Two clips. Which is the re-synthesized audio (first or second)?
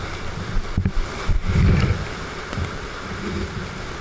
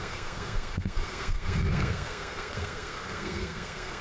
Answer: second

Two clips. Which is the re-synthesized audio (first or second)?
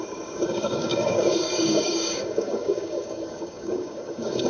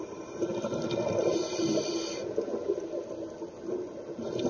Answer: first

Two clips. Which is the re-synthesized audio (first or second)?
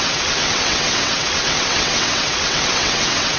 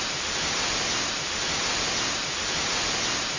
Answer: first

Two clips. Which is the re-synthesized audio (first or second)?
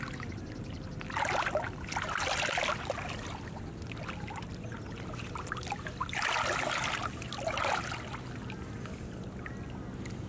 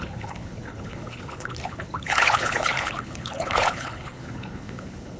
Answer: second